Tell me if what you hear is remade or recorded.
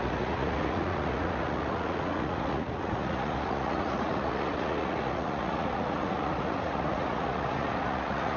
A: remade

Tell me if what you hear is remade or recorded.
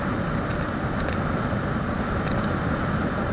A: recorded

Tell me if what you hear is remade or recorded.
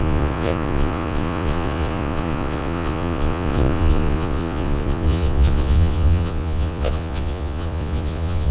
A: remade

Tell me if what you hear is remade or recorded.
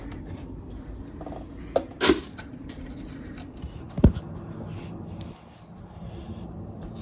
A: recorded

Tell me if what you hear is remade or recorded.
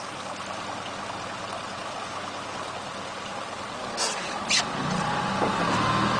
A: recorded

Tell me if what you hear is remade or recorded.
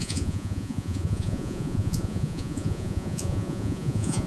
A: remade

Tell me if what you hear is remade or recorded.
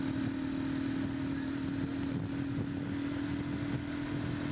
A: recorded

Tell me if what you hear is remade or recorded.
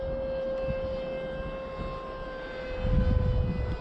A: recorded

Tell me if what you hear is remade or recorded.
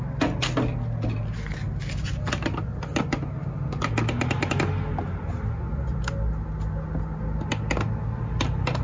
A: recorded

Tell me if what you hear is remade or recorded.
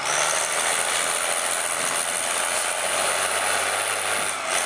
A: recorded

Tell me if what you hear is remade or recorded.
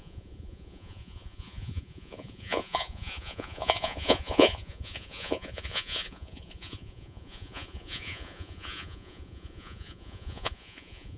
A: remade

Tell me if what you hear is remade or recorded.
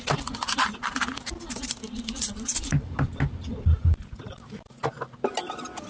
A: recorded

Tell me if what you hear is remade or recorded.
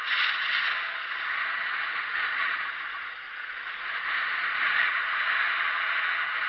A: remade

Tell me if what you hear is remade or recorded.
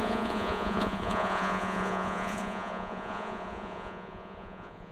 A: remade